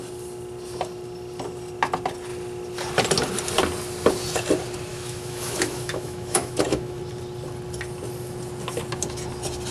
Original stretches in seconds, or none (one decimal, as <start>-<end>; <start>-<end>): 0.0-4.9; 7.0-9.7